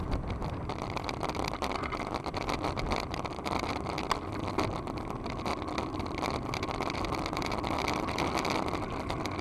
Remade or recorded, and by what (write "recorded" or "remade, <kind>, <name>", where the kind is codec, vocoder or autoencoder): recorded